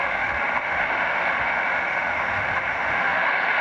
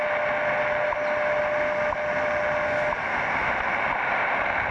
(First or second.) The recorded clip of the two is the second